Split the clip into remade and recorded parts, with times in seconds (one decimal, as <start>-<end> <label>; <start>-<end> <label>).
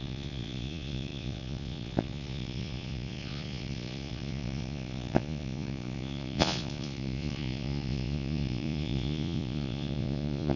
0.0-10.6 remade